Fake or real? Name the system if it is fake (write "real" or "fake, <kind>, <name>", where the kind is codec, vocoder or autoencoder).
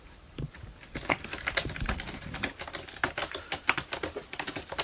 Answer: real